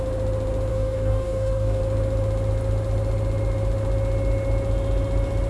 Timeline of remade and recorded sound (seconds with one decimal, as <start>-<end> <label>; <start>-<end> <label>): 0.0-0.7 recorded; 0.7-1.8 remade; 1.8-5.5 recorded